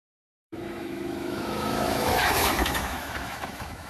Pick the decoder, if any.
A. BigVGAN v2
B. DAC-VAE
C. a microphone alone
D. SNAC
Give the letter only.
B